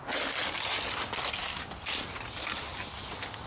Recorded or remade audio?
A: recorded